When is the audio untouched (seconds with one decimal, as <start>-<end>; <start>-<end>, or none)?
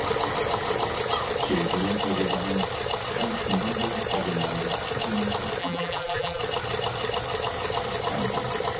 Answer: 0.0-5.6; 6.4-8.8